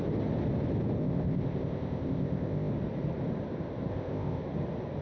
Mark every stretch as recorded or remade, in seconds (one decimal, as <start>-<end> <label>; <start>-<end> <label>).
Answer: 0.0-1.0 recorded; 1.0-2.7 remade; 2.7-3.9 recorded; 3.9-4.4 remade; 4.4-5.0 recorded